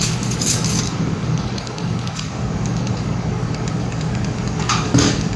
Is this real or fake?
fake